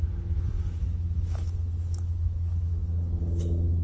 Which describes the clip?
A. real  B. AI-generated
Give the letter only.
B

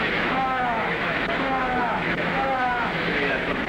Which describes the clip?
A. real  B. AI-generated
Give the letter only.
B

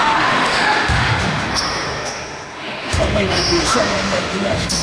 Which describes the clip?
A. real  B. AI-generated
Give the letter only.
B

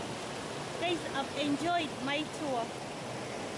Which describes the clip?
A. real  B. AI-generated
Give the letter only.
A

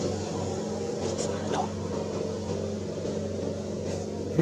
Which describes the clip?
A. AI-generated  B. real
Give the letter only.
B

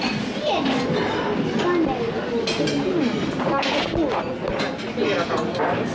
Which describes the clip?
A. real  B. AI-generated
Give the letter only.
A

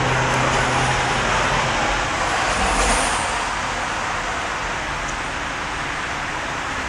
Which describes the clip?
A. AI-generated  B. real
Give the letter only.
B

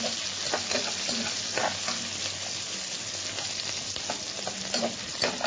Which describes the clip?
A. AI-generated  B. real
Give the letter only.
B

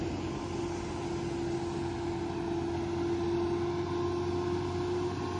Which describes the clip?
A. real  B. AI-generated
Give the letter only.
A